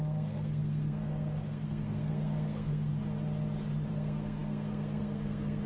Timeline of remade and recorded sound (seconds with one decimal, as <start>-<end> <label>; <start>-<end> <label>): 0.0-2.9 remade; 2.9-3.9 recorded; 3.9-5.7 remade